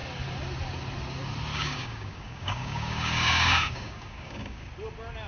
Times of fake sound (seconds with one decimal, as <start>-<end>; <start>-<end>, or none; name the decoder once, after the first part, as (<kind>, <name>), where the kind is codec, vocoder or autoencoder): 1.5-4.7 (codec, DAC)